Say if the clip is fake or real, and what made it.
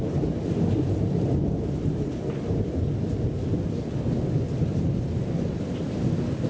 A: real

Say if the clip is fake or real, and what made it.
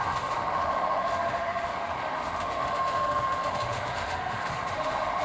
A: fake, autoencoder, DAC-VAE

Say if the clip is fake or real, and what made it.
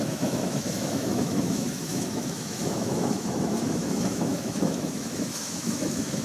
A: fake, autoencoder, DAC-VAE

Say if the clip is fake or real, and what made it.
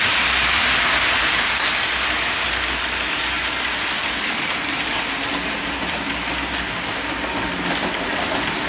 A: real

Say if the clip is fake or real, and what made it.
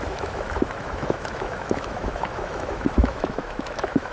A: fake, autoencoder, DAC-VAE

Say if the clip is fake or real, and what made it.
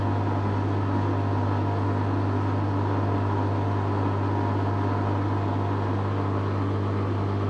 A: real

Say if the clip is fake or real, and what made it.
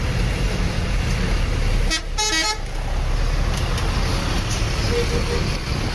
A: real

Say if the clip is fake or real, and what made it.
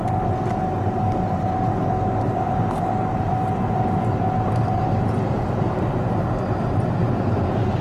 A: real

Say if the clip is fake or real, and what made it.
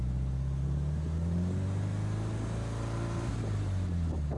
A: real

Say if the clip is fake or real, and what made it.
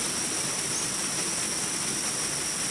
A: real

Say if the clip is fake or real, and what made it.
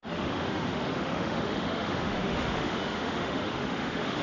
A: fake, autoencoder, DAC-VAE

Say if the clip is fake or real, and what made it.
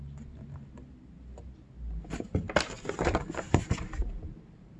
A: real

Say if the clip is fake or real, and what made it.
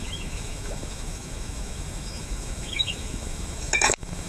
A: fake, autoencoder, DAC-VAE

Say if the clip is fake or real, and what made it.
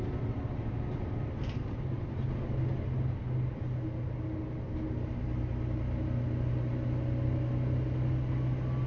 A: real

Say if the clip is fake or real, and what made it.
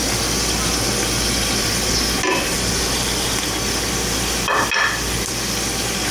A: real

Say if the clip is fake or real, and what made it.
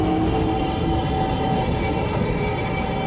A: real